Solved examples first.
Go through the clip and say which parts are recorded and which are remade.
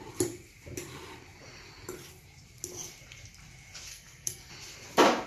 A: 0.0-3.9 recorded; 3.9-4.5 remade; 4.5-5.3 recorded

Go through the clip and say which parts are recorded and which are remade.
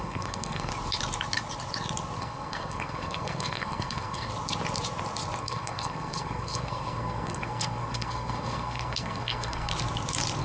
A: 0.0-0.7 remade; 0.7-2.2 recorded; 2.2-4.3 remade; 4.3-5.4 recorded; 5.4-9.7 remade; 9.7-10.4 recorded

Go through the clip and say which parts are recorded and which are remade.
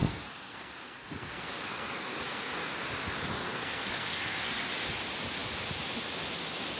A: 0.0-2.7 remade; 2.7-3.4 recorded; 3.4-4.6 remade; 4.6-6.8 recorded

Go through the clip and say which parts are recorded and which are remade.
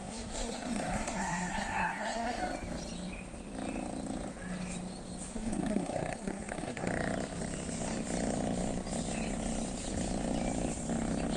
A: 0.0-2.4 remade; 2.4-5.3 recorded; 5.3-6.9 remade; 6.9-11.4 recorded